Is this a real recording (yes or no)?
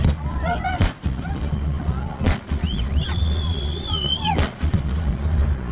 no